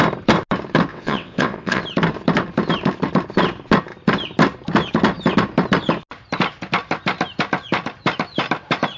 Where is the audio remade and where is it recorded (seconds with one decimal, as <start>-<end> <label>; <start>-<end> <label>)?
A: 0.0-0.9 recorded; 0.9-1.8 remade; 1.8-9.0 recorded